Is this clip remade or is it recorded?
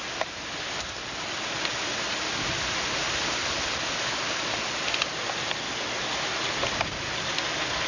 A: recorded